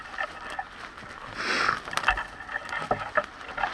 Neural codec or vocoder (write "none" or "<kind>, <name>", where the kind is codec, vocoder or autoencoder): none